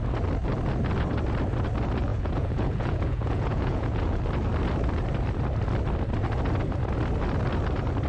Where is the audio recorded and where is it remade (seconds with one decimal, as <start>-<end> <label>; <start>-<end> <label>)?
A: 0.0-2.1 recorded; 2.1-4.2 remade; 4.2-8.1 recorded